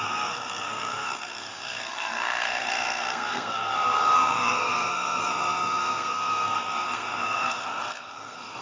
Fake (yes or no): yes